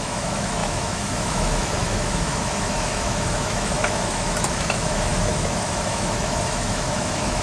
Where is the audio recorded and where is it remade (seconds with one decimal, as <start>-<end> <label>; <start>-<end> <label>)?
0.0-7.4 remade